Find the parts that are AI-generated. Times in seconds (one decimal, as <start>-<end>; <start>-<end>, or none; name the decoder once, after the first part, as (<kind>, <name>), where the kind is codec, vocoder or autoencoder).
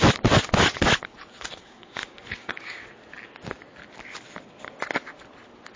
1.5-2.8 (codec, DAC)